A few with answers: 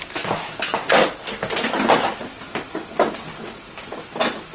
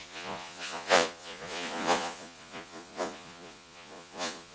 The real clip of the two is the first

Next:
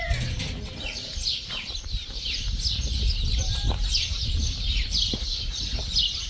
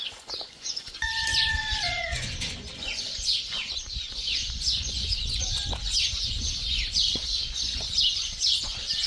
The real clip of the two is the first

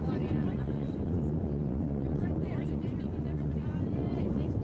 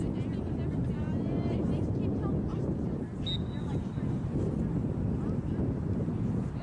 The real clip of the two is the second